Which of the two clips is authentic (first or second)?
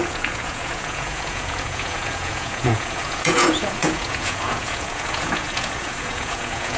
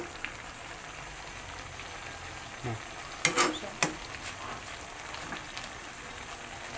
second